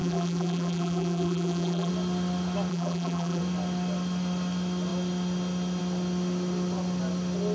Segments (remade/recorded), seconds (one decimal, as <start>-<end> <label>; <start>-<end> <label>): 0.0-1.9 remade; 1.9-2.7 recorded; 2.7-3.4 remade; 3.4-7.5 recorded